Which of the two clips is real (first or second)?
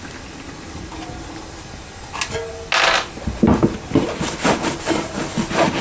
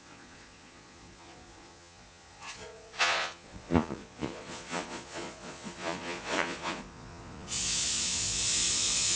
first